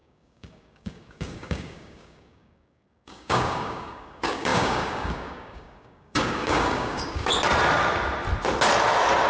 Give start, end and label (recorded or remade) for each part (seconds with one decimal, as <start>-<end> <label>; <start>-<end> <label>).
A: 0.0-7.3 remade; 7.3-9.3 recorded